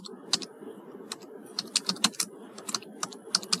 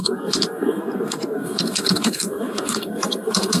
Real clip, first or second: first